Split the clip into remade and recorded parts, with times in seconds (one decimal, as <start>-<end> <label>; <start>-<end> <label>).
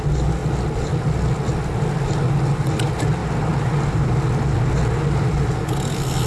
0.0-6.3 recorded